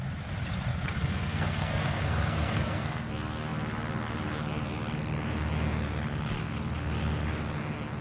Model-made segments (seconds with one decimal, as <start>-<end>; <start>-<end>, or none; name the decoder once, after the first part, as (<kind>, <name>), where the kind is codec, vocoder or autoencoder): 0.7-3.1 (codec, SNAC)